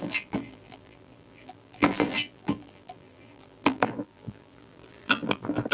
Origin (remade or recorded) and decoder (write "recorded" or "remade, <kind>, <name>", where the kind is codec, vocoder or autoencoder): remade, vocoder, BigVGAN v2